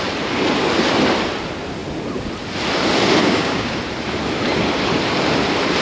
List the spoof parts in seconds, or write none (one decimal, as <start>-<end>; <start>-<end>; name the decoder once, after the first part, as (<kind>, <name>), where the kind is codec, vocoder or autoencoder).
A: 3.2-3.8 (codec, DAC)